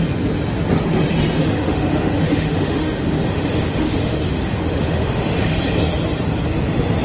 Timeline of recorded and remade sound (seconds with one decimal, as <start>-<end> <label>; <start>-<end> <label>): 0.0-1.4 recorded; 1.4-5.6 remade; 5.6-7.0 recorded